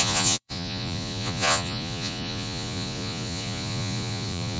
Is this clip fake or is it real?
fake